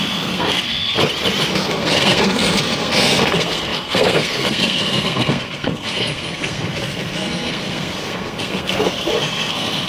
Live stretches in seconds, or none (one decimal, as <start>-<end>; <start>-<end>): 0.9-1.5